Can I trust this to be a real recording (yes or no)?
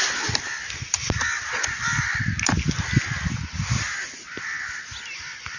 yes